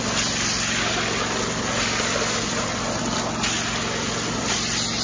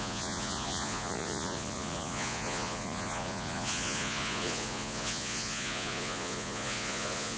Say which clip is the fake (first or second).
second